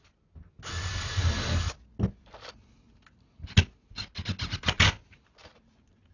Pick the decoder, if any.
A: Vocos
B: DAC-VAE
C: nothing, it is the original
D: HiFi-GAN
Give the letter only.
C